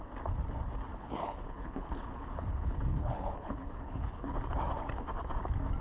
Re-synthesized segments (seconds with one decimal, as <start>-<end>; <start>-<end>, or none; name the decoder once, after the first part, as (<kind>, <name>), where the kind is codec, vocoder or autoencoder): 0.9-4.4 (codec, HILCodec)